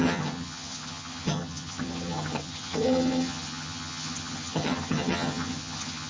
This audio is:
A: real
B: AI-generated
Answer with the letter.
B